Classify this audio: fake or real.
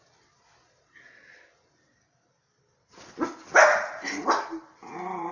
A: real